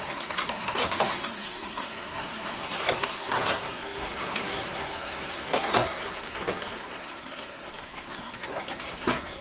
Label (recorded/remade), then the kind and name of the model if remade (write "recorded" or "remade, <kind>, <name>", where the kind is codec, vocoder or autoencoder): remade, codec, SNAC